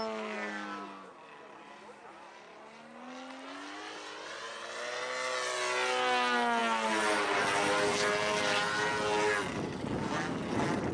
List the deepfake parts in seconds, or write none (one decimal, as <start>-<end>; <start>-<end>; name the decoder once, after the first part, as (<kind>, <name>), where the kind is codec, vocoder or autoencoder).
none